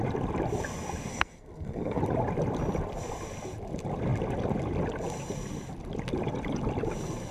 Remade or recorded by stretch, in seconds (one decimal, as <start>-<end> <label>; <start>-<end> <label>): 0.0-1.1 recorded; 1.1-2.0 remade; 2.0-7.3 recorded